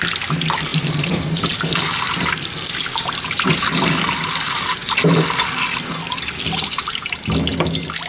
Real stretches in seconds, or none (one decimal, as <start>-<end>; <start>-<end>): 0.0-0.7; 1.6-8.1

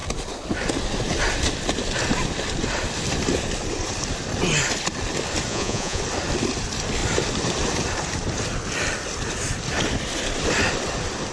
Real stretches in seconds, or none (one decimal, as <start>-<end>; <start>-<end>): 0.0-5.5; 6.0-11.3